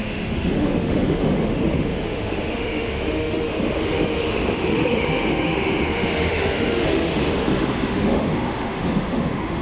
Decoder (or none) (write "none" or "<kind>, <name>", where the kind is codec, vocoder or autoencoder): autoencoder, DAC-VAE